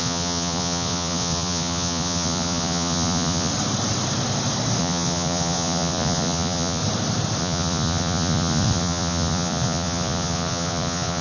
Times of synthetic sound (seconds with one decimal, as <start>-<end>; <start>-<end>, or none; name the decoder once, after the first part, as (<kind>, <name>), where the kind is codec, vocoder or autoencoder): 0.0-3.5 (vocoder, Vocos); 4.8-6.8; 7.4-11.2